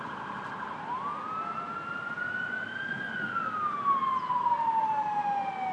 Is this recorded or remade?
recorded